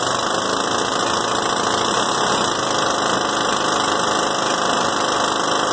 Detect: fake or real real